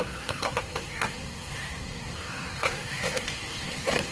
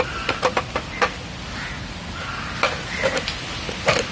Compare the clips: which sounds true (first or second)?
second